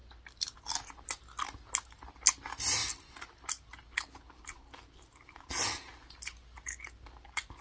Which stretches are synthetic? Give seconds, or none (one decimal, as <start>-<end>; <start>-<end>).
none